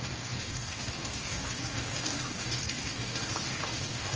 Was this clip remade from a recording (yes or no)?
yes